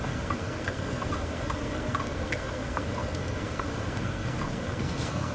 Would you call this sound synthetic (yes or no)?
yes